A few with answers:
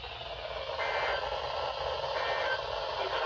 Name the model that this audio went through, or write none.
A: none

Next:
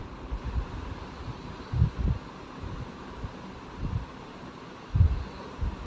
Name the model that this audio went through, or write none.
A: none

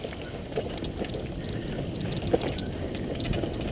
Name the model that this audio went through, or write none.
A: none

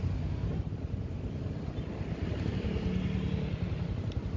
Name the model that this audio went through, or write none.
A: none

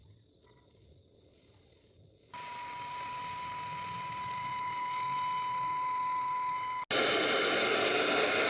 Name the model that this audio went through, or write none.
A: none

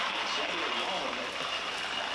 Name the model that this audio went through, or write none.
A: none